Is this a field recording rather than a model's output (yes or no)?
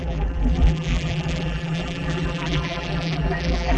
no